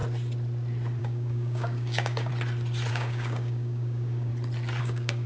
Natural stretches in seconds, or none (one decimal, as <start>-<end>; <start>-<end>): 0.0-1.0; 2.3-2.9; 4.3-4.8